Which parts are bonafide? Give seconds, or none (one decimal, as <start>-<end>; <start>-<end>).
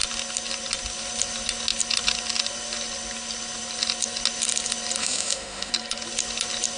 0.0-5.0; 5.7-6.8